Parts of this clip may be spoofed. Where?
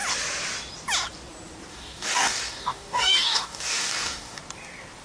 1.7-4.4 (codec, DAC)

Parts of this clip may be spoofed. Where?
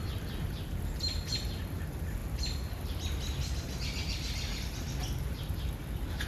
none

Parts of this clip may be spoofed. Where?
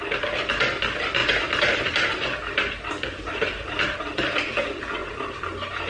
1.2-3.8 (vocoder, BigVGAN v2); 5.0-5.9